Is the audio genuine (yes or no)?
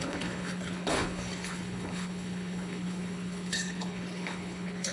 no